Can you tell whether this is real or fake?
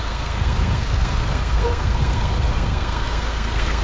fake